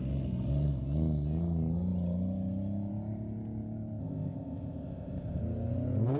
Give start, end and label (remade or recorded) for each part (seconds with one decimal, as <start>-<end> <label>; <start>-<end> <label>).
0.0-4.0 recorded; 4.0-5.4 remade; 5.4-6.2 recorded